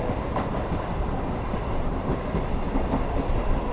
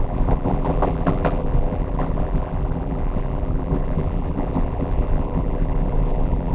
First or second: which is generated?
second